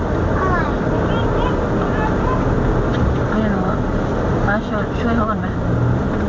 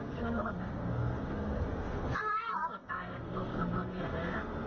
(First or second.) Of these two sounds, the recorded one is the first